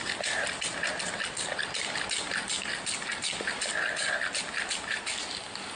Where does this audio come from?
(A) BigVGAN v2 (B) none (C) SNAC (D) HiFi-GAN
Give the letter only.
B